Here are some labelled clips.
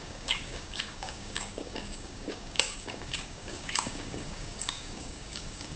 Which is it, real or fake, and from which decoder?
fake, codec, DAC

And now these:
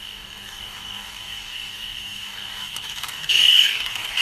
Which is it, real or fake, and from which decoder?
fake, codec, DAC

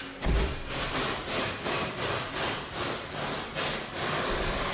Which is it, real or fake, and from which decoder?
real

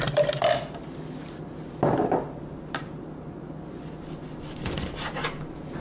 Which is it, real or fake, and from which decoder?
real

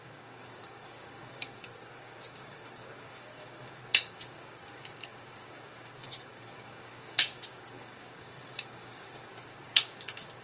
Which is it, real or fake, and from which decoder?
fake, codec, DAC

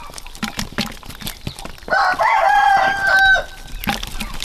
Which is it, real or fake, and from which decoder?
real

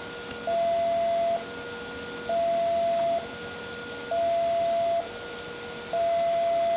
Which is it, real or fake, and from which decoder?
real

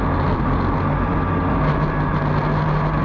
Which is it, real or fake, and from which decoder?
real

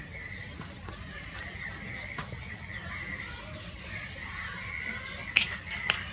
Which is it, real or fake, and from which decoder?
real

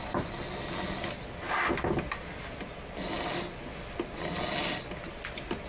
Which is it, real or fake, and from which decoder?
real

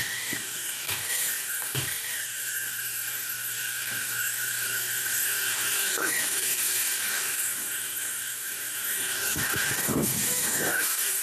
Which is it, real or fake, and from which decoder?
fake, codec, DAC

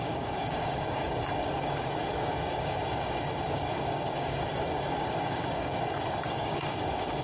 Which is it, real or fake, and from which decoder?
fake, codec, DAC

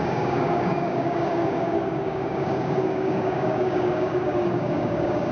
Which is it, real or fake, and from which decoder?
fake, codec, DAC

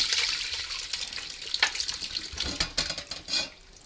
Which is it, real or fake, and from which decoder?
real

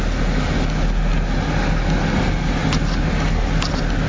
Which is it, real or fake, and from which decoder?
real